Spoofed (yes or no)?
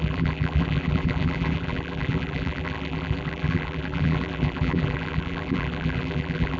yes